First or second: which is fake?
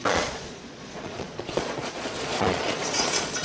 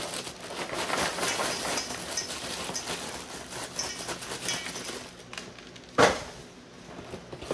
first